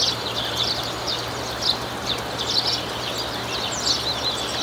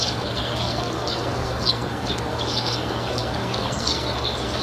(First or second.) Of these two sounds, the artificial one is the second